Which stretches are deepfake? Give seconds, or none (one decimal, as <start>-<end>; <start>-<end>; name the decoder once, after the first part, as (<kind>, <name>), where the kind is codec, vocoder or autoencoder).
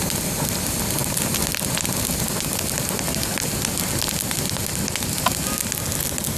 none